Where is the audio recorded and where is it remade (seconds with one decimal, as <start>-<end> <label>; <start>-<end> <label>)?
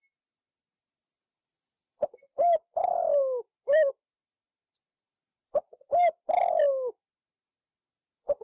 0.0-8.4 recorded